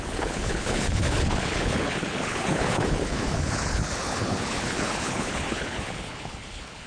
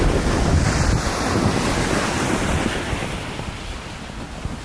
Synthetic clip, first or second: first